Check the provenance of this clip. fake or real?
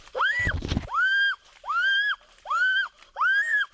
real